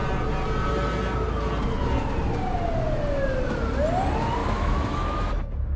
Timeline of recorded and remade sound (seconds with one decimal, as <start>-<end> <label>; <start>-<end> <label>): 0.0-4.4 recorded; 4.4-5.3 remade; 5.3-5.8 recorded